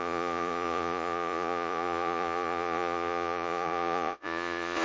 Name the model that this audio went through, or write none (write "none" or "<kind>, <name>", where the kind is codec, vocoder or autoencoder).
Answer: vocoder, Vocos